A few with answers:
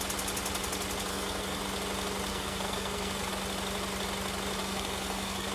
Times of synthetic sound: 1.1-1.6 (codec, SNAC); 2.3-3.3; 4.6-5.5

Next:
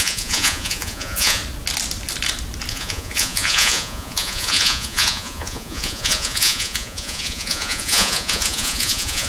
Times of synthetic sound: 0.0-1.4 (vocoder, Vocos); 2.7-9.3

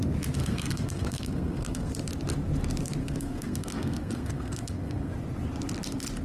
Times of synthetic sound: 0.4-1.9 (codec, SNAC); 3.0-5.1

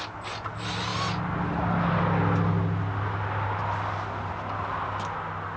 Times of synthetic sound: none

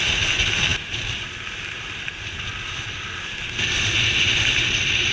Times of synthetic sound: none

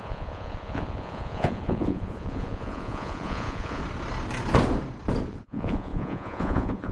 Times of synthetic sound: 0.0-3.8 (vocoder, Vocos); 5.3-6.9

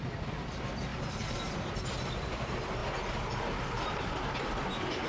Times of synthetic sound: 0.9-1.7 (vocoder, BigVGAN v2)